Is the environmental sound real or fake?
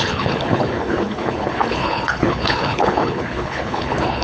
fake